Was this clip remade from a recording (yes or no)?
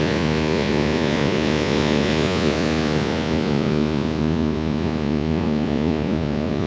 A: yes